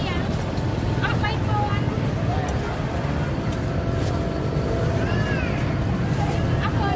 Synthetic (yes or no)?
no